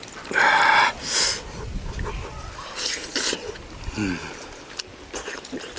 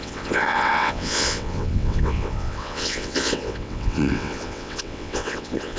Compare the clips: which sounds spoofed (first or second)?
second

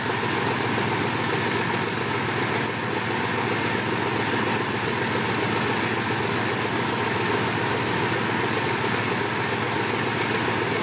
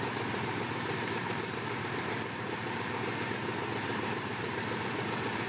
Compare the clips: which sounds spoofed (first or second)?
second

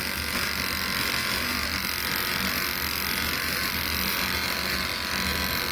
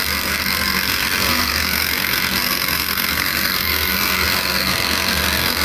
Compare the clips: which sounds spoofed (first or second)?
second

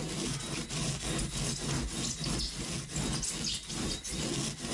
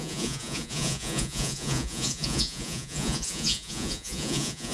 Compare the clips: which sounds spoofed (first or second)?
second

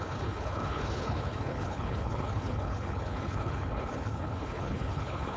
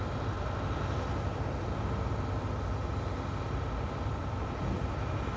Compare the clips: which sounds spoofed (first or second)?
first